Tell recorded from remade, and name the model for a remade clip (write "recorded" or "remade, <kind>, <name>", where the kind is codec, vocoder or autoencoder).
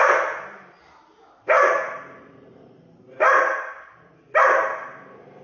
recorded